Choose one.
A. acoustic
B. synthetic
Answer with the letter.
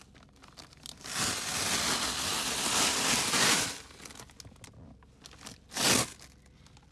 A